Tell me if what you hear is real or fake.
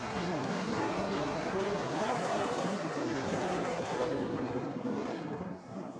fake